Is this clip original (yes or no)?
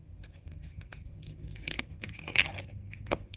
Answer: no